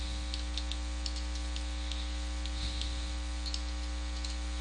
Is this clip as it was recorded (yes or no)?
yes